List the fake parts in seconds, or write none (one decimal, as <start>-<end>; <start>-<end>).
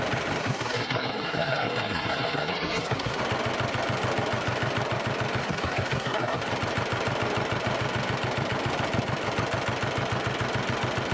0.4-3.2; 5.4-6.4